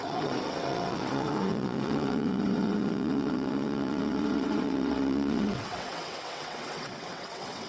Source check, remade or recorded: remade